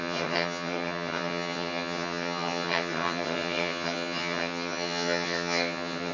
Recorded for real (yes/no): no